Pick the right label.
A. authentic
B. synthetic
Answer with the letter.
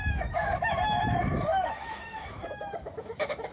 B